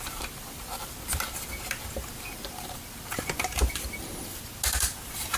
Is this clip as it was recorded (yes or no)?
yes